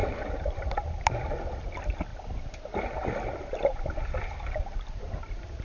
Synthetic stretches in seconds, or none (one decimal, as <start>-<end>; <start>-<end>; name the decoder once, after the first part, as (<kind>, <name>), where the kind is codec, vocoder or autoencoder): none